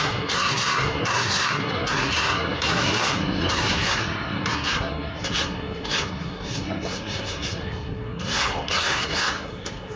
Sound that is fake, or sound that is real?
fake